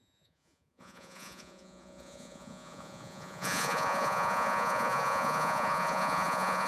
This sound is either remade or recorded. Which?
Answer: remade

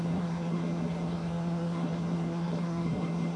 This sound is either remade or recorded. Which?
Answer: remade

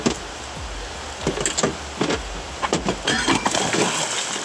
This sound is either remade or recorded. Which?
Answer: recorded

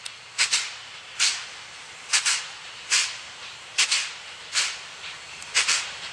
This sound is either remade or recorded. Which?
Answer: remade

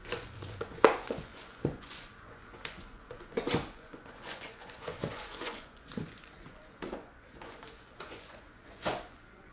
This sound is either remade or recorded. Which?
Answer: remade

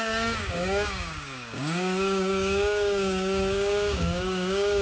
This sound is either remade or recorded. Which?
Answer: remade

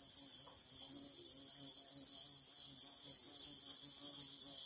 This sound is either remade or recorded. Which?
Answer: recorded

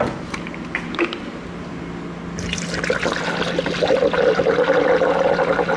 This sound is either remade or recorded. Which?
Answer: recorded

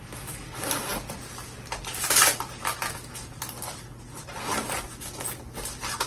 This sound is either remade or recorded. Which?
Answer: recorded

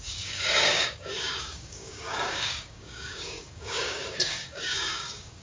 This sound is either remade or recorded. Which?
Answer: remade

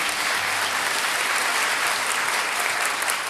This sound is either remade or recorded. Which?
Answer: recorded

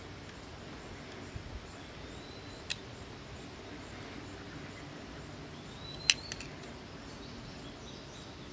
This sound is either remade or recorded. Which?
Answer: recorded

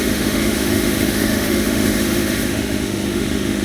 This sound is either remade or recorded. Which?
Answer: remade